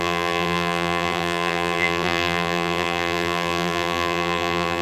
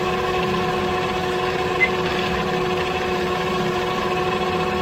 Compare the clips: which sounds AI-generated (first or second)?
first